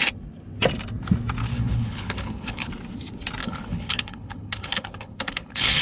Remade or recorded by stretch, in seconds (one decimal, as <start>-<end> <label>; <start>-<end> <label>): 0.0-1.5 recorded; 1.5-2.7 remade; 2.7-3.4 recorded; 3.4-5.8 remade